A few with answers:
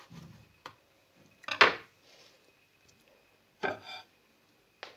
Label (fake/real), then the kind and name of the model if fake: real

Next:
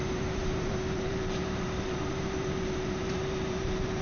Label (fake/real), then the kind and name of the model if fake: fake, vocoder, BigVGAN v2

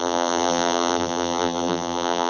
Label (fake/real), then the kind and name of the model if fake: fake, vocoder, BigVGAN v2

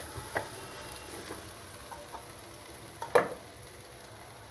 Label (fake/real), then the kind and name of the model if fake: real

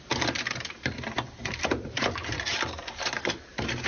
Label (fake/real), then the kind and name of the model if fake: fake, vocoder, BigVGAN v2